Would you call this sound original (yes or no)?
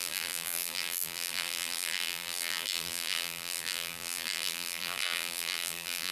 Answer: no